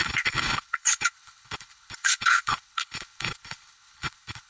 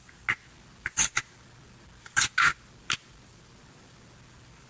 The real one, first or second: second